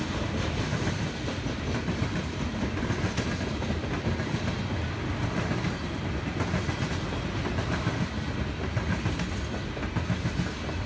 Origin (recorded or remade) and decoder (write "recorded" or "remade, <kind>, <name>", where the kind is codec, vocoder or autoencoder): recorded